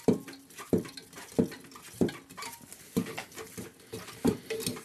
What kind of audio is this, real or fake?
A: real